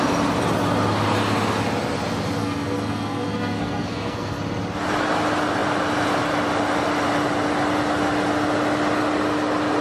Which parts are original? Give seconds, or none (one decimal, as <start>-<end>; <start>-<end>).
0.0-2.4; 4.4-9.8